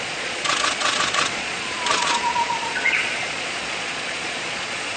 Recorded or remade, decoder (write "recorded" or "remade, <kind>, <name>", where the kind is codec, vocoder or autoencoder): remade, vocoder, Vocos